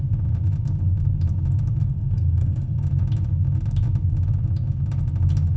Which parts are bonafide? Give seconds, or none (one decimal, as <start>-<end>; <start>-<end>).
0.0-1.8; 2.8-5.6